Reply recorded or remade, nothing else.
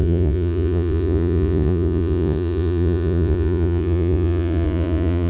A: remade